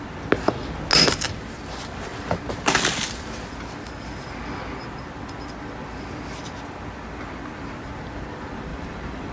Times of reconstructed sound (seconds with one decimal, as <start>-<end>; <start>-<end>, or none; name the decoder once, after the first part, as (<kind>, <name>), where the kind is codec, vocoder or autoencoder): 8.7-9.3 (vocoder, BigVGAN v2)